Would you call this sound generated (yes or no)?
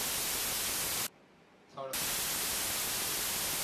no